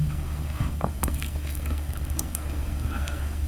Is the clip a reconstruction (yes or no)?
yes